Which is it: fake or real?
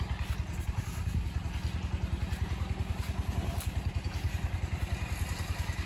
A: real